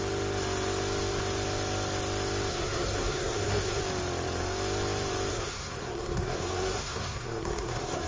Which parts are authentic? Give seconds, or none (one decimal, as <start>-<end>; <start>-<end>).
0.0-2.5; 3.8-5.3